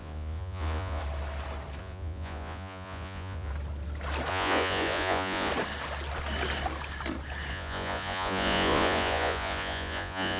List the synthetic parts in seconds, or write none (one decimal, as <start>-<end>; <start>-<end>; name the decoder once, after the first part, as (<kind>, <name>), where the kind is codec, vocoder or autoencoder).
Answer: 0.0-1.0 (vocoder, Vocos); 1.8-3.5; 4.3-5.5; 7.5-10.4